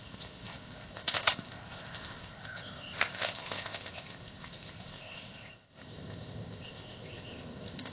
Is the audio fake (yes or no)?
yes